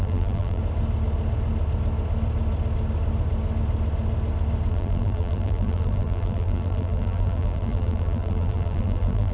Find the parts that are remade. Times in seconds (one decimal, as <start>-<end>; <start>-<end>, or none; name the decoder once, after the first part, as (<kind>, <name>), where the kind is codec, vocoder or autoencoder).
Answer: 0.0-0.6 (vocoder, BigVGAN v2); 4.7-9.3